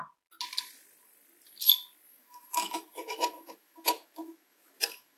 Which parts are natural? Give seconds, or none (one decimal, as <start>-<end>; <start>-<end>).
0.0-2.1